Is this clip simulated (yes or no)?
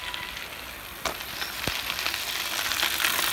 no